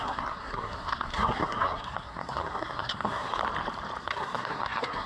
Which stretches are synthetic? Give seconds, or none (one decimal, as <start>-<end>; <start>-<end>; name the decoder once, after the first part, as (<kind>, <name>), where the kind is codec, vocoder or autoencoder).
0.0-3.4 (codec, SNAC); 4.0-5.1